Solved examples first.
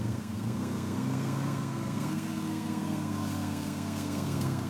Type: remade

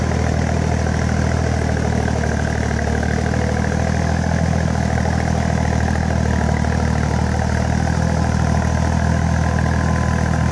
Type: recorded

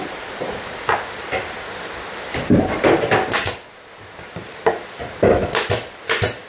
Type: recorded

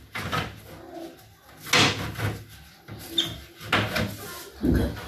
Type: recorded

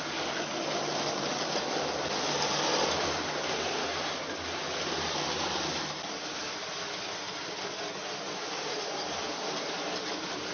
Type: recorded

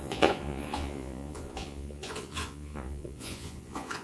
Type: remade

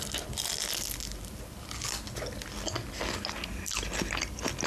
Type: recorded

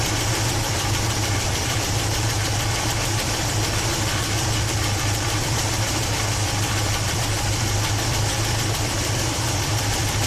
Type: remade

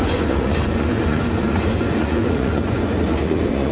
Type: remade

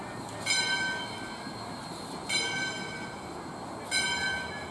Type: recorded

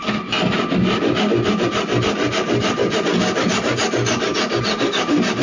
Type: recorded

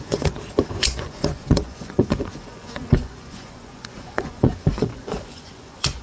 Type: remade